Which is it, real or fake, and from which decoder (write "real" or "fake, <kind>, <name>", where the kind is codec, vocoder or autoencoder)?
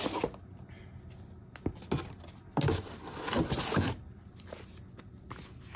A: real